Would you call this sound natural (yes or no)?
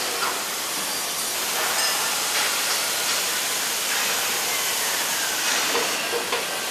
no